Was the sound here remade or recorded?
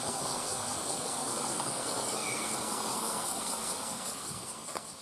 remade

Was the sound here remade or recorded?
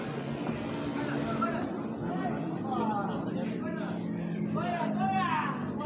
recorded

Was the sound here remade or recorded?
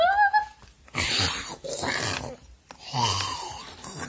recorded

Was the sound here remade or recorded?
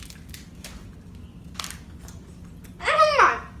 recorded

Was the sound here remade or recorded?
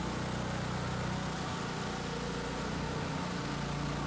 recorded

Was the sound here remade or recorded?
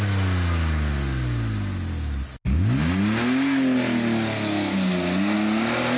recorded